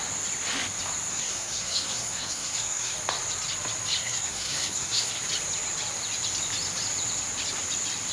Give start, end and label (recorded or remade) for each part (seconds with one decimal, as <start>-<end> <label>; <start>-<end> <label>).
0.0-1.1 recorded; 1.1-2.9 remade; 2.9-4.0 recorded; 4.0-5.1 remade; 5.1-8.1 recorded